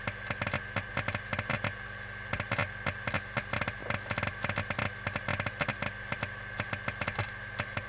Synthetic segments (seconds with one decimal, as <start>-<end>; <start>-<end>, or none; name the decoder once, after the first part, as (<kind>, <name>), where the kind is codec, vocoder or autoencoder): none